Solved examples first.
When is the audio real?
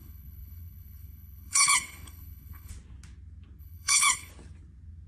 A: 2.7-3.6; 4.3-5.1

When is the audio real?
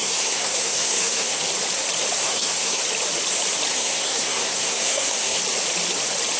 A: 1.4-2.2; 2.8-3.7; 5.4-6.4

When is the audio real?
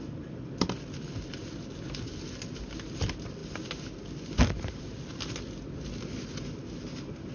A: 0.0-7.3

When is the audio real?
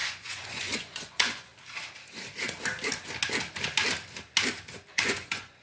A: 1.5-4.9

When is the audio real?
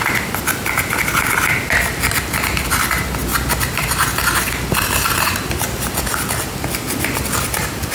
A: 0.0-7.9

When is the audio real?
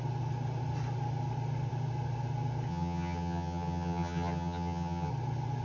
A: 0.0-2.7; 5.1-5.6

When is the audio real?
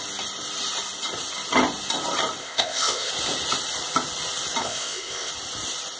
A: 0.0-2.4; 3.1-4.6; 5.3-6.0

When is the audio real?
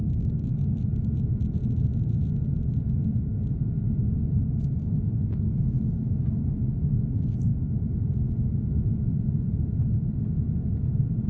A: 0.8-11.3